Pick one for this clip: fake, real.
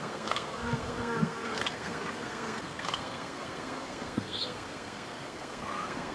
fake